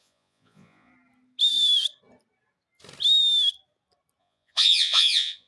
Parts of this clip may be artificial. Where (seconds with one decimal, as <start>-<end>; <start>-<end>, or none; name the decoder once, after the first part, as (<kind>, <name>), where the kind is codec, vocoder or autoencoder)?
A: 0.0-0.9 (vocoder, Vocos); 4.2-5.5